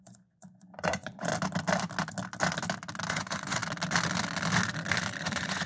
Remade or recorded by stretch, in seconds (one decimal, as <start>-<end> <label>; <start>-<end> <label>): 0.0-1.3 remade; 1.3-3.1 recorded; 3.1-3.6 remade; 3.6-5.2 recorded; 5.2-5.7 remade

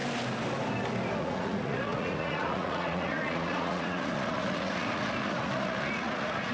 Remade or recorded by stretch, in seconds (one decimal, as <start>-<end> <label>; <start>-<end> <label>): 0.0-1.2 recorded; 1.2-6.5 remade

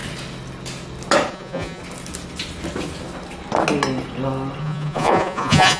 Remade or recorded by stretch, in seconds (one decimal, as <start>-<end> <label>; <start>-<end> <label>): 0.0-1.3 recorded; 1.3-1.8 remade; 1.8-4.6 recorded; 4.6-5.8 remade

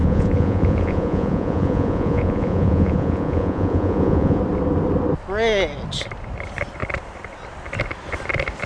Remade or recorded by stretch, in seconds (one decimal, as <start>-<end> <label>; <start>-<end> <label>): 0.0-4.4 remade; 4.4-8.7 recorded